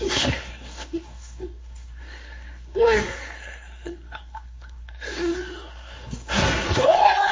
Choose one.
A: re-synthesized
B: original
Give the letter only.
A